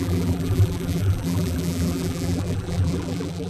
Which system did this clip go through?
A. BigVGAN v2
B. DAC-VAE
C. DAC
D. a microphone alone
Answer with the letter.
A